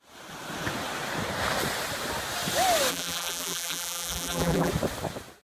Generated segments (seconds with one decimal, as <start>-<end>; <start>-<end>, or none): 2.9-4.7

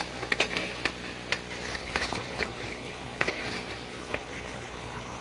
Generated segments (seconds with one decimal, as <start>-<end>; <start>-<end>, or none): 1.8-3.4; 3.9-5.2

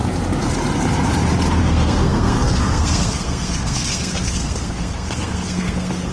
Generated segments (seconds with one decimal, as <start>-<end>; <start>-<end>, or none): 1.6-6.1